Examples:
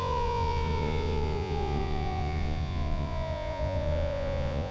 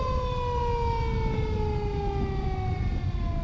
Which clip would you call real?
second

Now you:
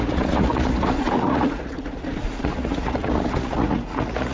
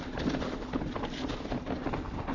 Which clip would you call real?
second